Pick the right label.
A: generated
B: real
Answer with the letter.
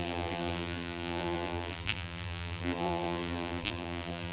A